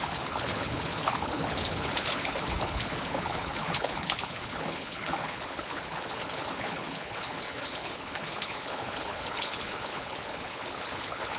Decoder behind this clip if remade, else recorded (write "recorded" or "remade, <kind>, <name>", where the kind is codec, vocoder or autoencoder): remade, codec, HILCodec